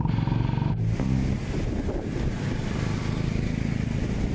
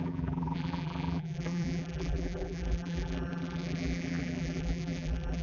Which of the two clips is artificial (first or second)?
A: second